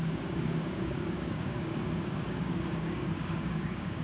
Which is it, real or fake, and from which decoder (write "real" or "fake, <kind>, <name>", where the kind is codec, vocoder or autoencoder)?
fake, codec, DAC